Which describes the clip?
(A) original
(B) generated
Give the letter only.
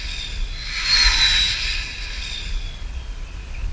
A